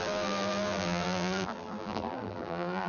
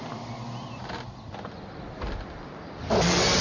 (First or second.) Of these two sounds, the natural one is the second